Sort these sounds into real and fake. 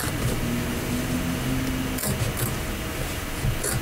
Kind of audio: real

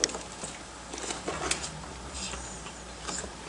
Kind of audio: real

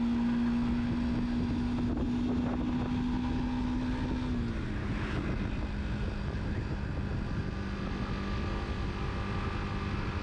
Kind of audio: real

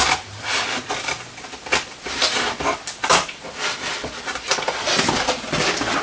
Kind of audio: fake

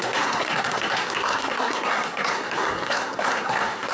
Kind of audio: fake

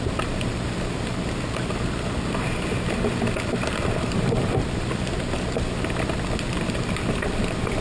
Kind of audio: real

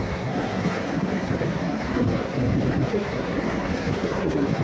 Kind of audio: fake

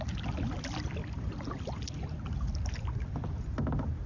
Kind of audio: real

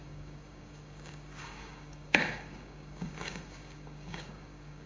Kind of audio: fake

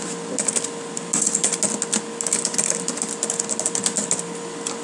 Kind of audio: real